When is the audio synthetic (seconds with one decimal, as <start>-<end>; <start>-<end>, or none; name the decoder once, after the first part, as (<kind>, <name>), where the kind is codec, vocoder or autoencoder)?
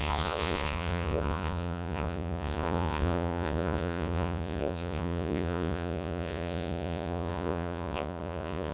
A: 0.0-8.7 (vocoder, Vocos)